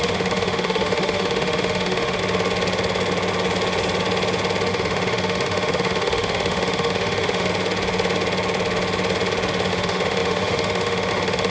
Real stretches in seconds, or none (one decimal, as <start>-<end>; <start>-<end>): 2.2-4.7; 7.5-9.7